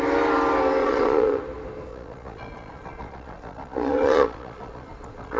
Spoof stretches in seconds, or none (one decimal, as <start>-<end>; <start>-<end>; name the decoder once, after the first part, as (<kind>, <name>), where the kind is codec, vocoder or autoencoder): 0.8-1.4 (vocoder, Vocos); 1.9-5.4